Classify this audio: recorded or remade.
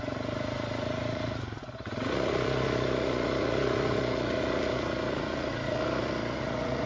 remade